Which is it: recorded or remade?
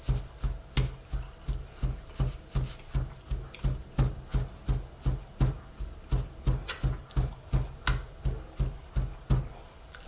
recorded